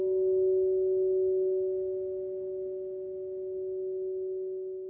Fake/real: real